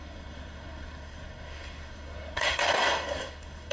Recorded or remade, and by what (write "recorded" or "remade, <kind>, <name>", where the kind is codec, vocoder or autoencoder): remade, codec, SNAC